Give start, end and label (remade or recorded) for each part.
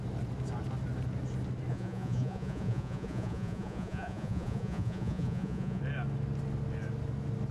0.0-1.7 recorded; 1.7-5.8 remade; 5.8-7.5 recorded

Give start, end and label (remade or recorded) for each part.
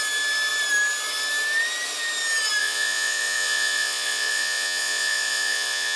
0.0-2.6 recorded; 2.6-6.0 remade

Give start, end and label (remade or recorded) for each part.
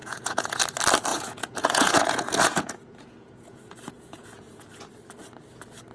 0.0-0.6 remade; 0.6-1.1 recorded; 1.1-4.6 remade; 4.6-5.9 recorded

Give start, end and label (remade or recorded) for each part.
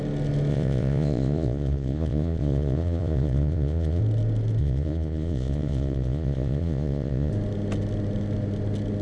0.0-0.5 recorded; 0.5-4.0 remade; 4.0-4.6 recorded; 4.6-7.3 remade; 7.3-9.0 recorded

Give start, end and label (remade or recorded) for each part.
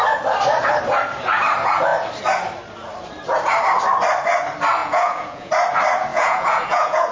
0.0-4.8 recorded; 4.8-5.5 remade; 5.5-6.1 recorded; 6.1-7.1 remade